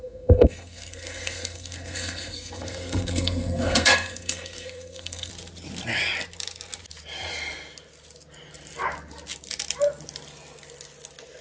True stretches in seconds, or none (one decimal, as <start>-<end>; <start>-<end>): 5.3-11.4